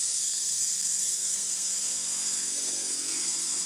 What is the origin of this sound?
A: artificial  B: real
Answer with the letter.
A